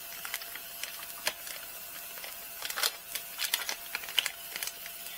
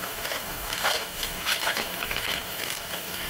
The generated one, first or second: second